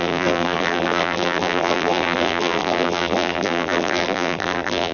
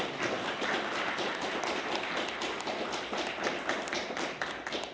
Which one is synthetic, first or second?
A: first